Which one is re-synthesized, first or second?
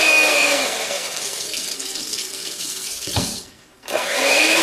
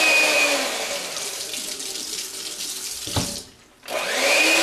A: first